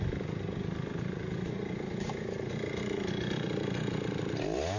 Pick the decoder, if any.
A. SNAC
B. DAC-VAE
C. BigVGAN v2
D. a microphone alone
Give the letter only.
D